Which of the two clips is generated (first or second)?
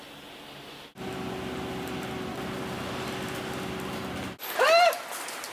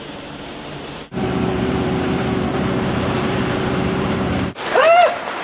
second